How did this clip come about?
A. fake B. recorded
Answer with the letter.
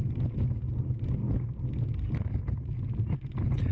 B